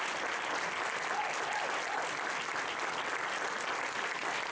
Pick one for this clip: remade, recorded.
recorded